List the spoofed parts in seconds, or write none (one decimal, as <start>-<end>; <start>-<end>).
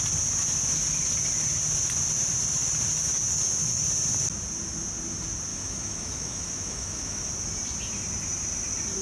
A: 5.5-7.3